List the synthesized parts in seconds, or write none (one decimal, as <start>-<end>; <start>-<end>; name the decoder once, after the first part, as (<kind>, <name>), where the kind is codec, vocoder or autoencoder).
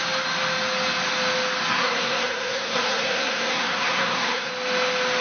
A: 1.7-4.5 (codec, SNAC)